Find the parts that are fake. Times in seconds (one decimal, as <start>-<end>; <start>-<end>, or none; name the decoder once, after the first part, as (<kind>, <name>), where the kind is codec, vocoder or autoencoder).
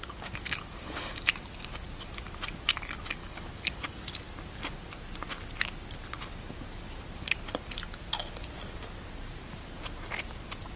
3.2-4.1 (codec, DAC)